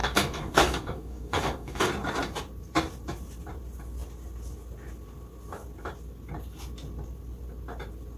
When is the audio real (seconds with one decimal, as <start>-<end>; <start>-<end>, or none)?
1.9-8.2